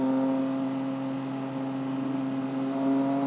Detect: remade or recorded recorded